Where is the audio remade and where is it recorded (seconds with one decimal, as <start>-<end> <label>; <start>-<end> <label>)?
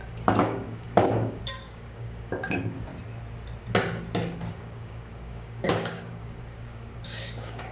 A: 0.0-2.9 remade; 2.9-4.5 recorded; 4.5-7.7 remade